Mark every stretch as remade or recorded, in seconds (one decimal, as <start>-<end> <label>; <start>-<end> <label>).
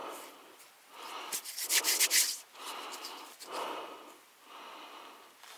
0.0-5.6 recorded